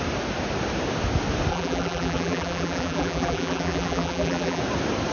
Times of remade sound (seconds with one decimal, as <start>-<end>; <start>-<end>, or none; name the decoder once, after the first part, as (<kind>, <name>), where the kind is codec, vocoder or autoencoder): 1.5-4.6 (vocoder, BigVGAN v2)